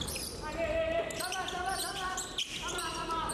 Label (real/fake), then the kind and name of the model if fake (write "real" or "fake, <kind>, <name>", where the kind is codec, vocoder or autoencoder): real